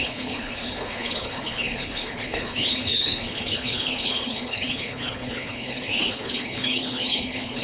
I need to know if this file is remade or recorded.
remade